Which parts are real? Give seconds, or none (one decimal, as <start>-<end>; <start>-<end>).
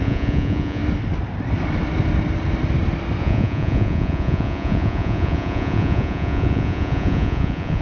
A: 0.8-3.2